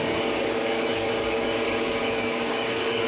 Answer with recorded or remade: remade